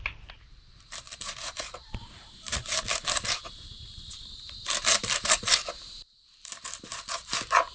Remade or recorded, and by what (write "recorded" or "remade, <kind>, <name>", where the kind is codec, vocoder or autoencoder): remade, vocoder, BigVGAN v2